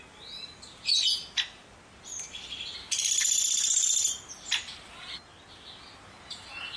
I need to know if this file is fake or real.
real